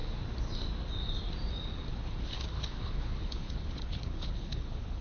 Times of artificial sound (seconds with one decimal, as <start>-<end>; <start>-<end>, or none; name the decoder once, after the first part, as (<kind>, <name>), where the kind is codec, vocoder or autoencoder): 1.9-5.0 (codec, HILCodec)